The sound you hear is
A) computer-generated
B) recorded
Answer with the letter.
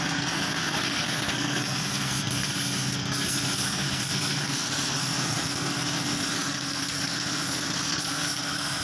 A